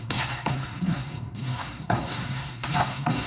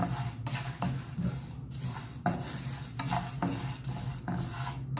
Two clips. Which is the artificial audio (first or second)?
first